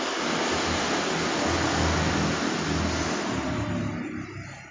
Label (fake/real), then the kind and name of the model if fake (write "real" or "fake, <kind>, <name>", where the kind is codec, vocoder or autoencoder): real